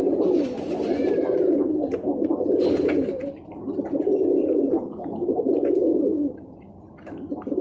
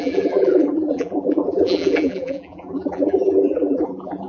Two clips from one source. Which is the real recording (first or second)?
first